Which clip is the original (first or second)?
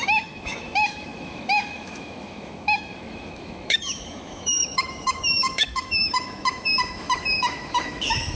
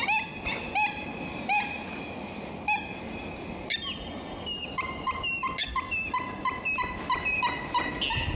second